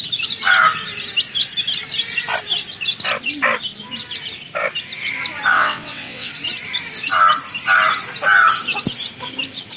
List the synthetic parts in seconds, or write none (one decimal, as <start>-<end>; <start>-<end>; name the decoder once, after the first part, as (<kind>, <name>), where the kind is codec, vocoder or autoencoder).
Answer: 5.5-6.3 (vocoder, WaveNeXt)